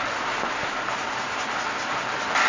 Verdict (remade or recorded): recorded